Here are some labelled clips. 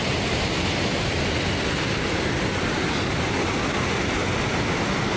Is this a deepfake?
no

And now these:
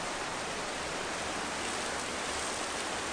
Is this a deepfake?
no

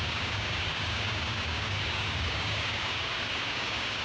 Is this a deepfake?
yes